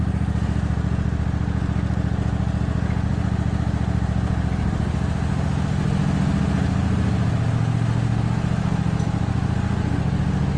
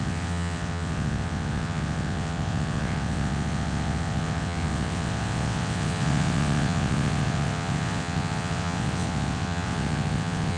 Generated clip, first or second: second